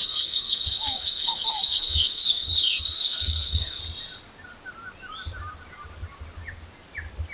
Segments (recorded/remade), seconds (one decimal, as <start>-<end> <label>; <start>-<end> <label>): 0.0-3.8 remade; 3.8-7.3 recorded